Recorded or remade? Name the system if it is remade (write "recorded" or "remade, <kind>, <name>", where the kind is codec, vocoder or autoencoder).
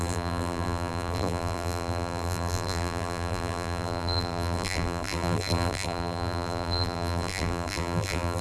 remade, vocoder, BigVGAN v2